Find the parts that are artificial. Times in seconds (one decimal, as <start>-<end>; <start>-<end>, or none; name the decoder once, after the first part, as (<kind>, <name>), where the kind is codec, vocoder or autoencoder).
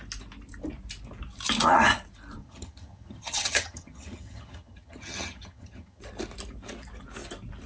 2.4-6.0 (vocoder, HiFi-GAN)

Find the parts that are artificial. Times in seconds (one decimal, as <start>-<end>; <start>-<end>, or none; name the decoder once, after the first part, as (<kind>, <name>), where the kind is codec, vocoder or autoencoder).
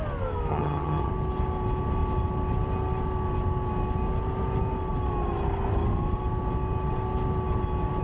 0.5-1.1 (vocoder, HiFi-GAN)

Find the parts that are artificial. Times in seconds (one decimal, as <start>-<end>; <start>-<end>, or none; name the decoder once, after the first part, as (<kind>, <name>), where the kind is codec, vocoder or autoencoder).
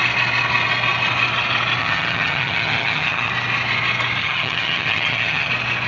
1.8-3.3 (vocoder, HiFi-GAN); 4.2-5.5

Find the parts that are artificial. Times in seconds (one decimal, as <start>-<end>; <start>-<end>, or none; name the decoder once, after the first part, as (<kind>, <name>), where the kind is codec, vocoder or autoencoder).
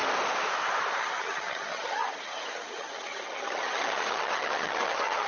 0.9-5.3 (vocoder, HiFi-GAN)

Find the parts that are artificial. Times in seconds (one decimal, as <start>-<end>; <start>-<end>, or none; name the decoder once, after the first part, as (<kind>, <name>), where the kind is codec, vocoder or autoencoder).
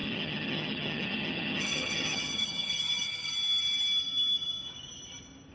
0.0-3.3 (vocoder, HiFi-GAN)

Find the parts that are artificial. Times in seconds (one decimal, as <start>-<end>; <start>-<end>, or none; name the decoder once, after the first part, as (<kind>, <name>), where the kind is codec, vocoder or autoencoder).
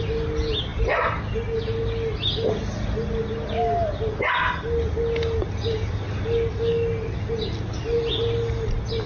none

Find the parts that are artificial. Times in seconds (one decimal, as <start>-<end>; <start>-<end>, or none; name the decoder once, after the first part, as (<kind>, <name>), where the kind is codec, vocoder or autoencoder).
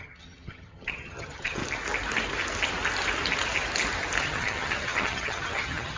0.0-1.6 (vocoder, HiFi-GAN); 4.2-6.0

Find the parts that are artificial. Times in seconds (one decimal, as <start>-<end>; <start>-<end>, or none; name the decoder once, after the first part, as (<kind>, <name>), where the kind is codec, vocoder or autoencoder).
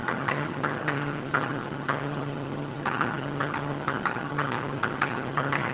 0.0-5.7 (vocoder, HiFi-GAN)